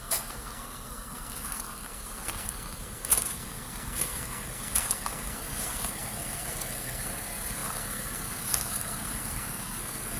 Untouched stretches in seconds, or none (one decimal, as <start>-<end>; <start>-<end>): none